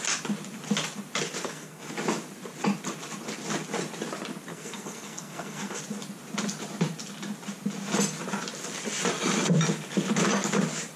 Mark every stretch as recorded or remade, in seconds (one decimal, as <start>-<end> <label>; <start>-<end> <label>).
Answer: 0.0-1.4 recorded; 1.4-1.9 remade; 1.9-4.5 recorded; 4.5-5.8 remade; 5.8-11.0 recorded